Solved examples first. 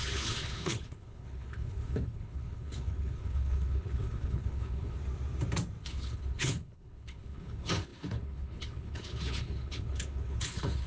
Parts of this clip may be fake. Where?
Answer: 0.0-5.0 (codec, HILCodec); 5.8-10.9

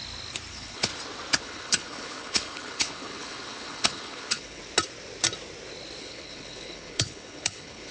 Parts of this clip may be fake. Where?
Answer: 0.5-0.9 (codec, HILCodec); 1.4-4.6; 6.0-7.9

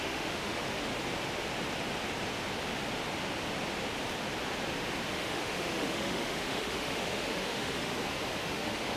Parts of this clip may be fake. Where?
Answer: 0.0-0.9 (autoencoder, DAC-VAE); 5.1-7.9; 8.4-9.0

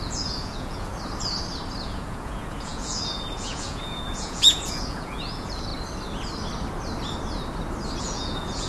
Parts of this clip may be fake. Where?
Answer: 0.0-0.9 (vocoder, Vocos); 1.8-5.7; 8.0-8.7

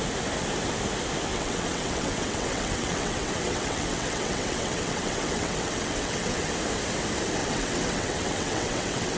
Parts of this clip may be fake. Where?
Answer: 1.3-6.5 (vocoder, WaveNeXt); 7.4-9.2